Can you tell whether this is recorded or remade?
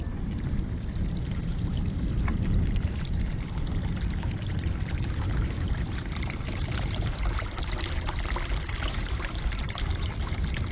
remade